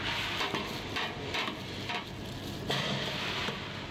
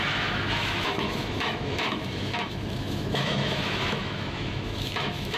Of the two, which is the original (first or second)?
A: first